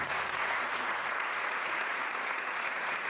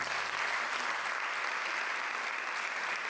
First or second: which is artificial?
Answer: first